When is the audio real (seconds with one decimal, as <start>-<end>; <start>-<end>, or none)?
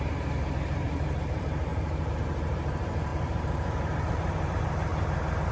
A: 4.9-5.5